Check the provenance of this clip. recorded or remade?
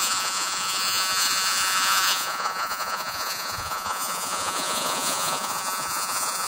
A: remade